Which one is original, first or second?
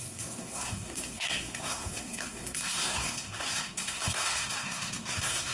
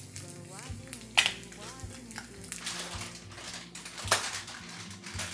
second